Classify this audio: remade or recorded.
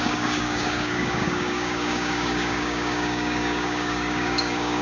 remade